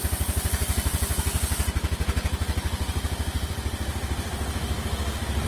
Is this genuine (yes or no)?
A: yes